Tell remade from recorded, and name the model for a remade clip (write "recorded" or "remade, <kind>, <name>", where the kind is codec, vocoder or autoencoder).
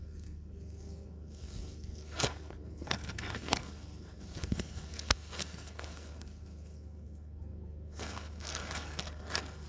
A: remade, codec, SNAC